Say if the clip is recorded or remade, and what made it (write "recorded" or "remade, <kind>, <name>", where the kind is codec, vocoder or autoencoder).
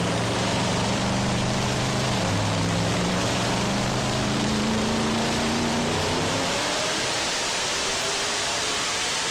remade, vocoder, BigVGAN v2